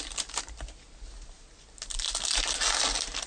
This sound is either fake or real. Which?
real